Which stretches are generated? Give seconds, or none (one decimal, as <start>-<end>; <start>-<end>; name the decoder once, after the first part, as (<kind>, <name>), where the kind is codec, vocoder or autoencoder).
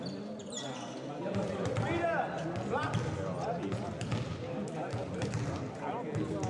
none